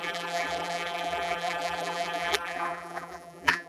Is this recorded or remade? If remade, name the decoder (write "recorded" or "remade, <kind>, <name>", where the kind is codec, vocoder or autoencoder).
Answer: remade, vocoder, BigVGAN v2